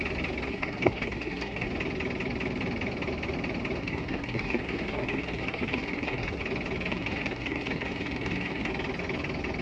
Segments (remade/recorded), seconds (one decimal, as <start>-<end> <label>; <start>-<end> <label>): 0.0-0.5 recorded; 0.5-1.7 remade; 1.7-3.8 recorded; 3.8-6.4 remade; 6.4-6.9 recorded; 6.9-8.7 remade; 8.7-9.6 recorded